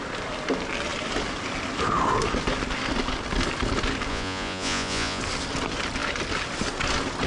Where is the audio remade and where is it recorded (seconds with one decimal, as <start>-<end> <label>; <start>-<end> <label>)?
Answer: 0.0-4.1 recorded; 4.1-5.2 remade; 5.2-7.3 recorded